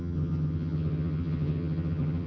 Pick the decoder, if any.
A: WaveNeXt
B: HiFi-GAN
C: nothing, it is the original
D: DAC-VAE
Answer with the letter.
B